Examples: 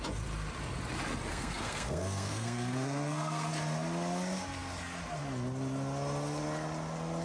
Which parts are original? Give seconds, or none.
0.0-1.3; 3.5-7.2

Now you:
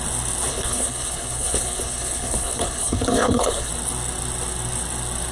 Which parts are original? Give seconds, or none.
0.0-0.5; 3.7-5.3

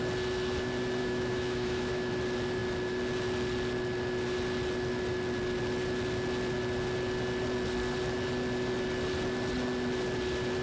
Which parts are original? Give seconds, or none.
0.0-1.0; 2.1-10.6